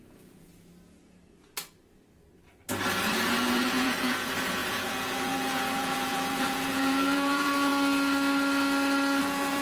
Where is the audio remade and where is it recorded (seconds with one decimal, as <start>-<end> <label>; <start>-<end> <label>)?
0.0-0.5 remade; 0.5-3.4 recorded; 3.4-7.7 remade; 7.7-9.2 recorded; 9.2-9.6 remade